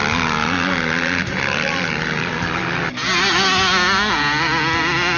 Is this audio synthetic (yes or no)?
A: no